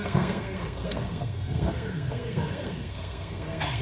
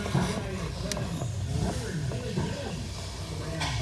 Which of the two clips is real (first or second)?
second